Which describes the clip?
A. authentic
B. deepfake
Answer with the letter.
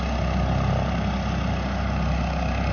A